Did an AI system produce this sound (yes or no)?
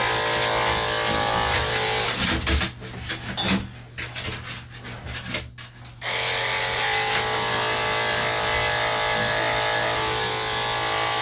no